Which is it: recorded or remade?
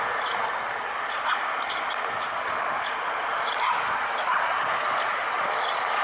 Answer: recorded